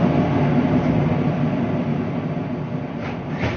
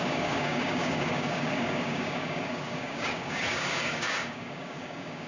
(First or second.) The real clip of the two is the first